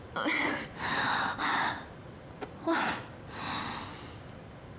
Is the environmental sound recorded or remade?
recorded